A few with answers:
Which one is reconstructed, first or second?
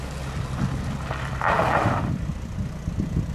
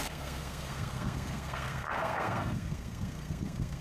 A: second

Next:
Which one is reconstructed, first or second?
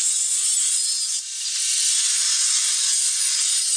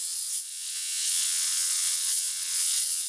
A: second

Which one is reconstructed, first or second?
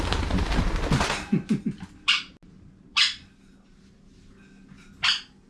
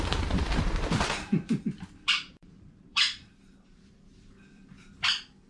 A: second